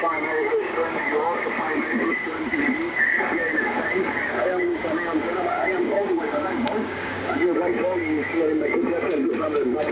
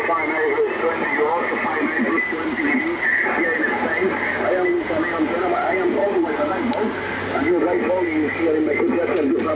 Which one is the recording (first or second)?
second